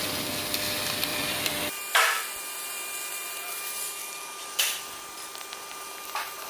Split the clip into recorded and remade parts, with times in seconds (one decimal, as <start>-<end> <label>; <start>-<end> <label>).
0.0-1.1 recorded; 1.1-3.5 remade; 3.5-4.0 recorded; 4.0-4.8 remade; 4.8-6.5 recorded